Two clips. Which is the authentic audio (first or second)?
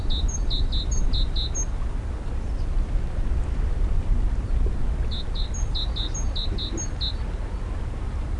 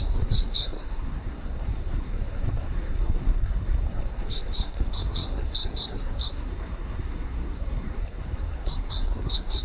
first